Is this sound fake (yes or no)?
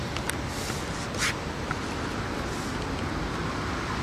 no